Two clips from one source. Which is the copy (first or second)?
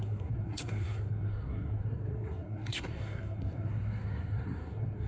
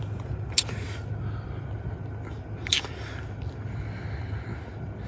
first